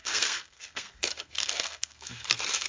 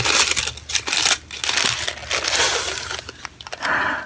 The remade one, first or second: first